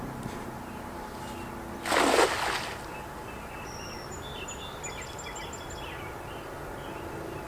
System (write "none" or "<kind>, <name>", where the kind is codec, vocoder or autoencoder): none